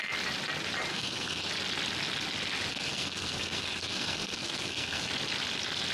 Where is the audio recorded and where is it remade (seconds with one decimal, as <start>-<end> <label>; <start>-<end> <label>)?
0.0-0.9 recorded; 0.9-1.5 remade; 1.5-2.7 recorded; 2.7-5.1 remade; 5.1-5.9 recorded